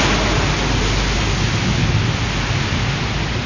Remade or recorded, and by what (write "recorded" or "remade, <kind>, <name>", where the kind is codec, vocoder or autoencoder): recorded